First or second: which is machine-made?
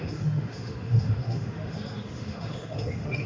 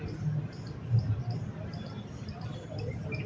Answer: first